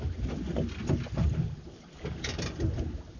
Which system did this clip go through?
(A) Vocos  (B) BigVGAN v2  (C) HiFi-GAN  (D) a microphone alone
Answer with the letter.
D